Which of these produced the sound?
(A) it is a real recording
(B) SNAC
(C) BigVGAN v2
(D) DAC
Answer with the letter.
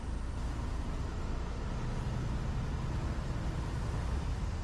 A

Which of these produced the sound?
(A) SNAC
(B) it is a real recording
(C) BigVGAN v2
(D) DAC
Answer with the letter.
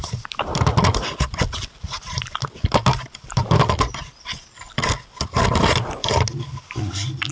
B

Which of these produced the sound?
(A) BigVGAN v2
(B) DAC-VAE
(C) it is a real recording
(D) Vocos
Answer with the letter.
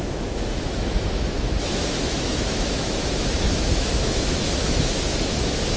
B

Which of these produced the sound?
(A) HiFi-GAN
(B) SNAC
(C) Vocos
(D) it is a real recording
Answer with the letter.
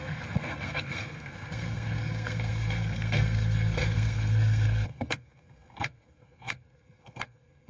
B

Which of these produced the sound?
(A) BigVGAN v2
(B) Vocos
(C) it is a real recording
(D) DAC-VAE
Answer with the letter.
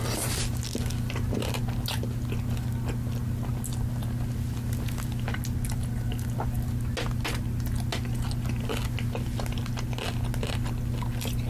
C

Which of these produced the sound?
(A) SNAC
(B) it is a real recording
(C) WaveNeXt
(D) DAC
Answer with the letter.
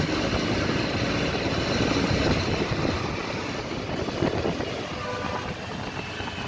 B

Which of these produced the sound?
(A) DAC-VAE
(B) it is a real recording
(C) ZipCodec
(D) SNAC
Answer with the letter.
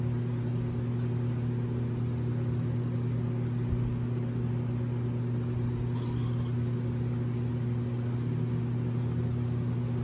B